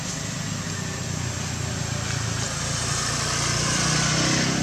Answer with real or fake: real